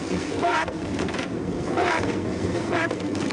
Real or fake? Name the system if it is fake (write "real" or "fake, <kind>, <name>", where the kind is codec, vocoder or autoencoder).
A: fake, codec, SNAC